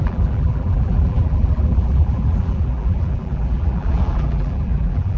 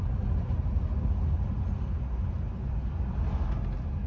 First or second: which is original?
second